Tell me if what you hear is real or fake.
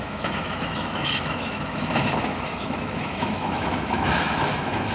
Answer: fake